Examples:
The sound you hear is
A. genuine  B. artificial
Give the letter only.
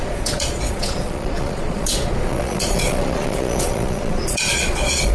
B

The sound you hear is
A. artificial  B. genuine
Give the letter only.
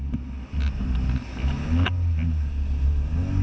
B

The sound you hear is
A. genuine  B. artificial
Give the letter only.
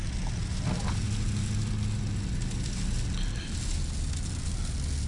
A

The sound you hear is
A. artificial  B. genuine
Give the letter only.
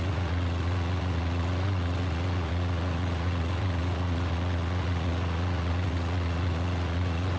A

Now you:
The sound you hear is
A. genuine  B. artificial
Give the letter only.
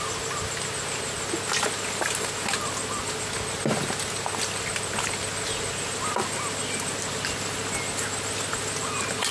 A